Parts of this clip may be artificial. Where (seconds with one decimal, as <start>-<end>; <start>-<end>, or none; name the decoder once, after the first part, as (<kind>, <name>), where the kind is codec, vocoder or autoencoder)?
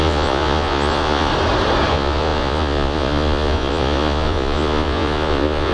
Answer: 0.0-1.3 (vocoder, Vocos); 1.9-5.7